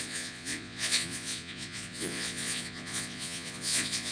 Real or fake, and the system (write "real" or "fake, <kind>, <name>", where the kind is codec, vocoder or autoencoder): fake, vocoder, Vocos